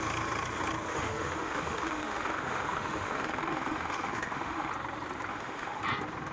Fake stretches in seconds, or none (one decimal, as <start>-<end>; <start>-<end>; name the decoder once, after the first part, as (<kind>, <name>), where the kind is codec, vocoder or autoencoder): 0.9-4.7 (autoencoder, DAC-VAE); 5.3-5.8